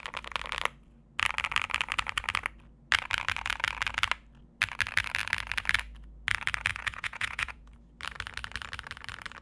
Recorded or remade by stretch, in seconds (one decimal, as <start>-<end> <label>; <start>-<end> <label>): 0.0-6.7 recorded; 6.7-7.7 remade; 7.7-9.4 recorded